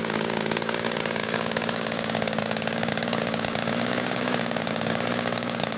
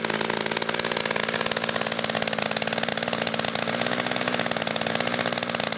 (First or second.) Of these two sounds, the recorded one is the second